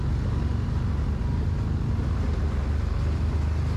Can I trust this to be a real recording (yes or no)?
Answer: yes